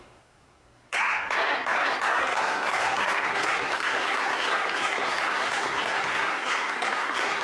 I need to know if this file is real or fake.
fake